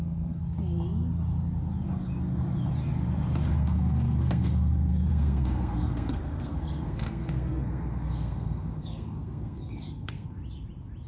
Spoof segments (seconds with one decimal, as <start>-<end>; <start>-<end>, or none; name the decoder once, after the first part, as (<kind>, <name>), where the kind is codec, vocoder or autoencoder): 0.0-0.4 (codec, SNAC); 3.5-10.4